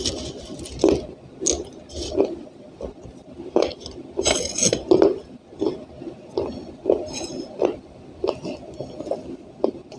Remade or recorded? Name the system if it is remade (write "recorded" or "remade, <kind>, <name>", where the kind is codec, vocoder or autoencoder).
recorded